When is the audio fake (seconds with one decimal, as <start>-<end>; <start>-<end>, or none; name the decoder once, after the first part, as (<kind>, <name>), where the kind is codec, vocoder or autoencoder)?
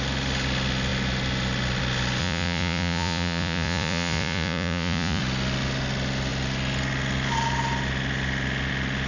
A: 2.2-5.2 (vocoder, Vocos)